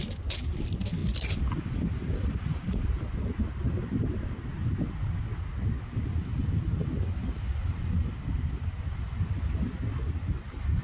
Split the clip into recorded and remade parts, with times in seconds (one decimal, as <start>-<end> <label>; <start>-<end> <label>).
0.0-10.8 recorded